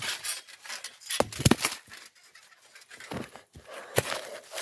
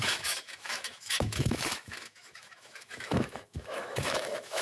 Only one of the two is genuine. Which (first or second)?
first